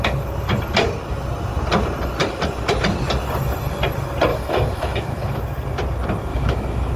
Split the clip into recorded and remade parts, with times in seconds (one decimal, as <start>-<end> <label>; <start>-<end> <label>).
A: 0.0-4.3 recorded; 4.3-5.4 remade; 5.4-6.3 recorded; 6.3-7.0 remade